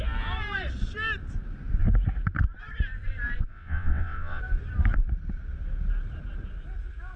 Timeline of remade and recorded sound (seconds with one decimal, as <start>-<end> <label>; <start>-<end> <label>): 0.0-3.5 recorded; 3.5-4.4 remade; 4.4-7.2 recorded